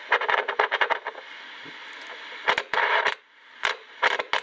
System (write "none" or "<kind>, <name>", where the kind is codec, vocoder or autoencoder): none